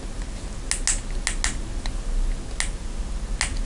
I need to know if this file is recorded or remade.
recorded